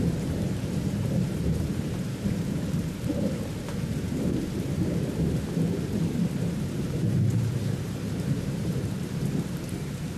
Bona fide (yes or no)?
no